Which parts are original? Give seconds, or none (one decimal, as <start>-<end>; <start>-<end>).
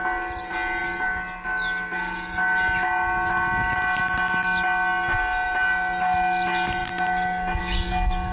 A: 0.0-8.3